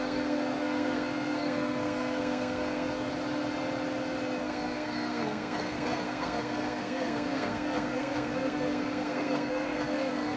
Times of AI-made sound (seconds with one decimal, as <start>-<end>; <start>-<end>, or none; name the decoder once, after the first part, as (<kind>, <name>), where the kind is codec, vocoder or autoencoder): 0.0-3.1 (codec, SNAC); 4.4-10.4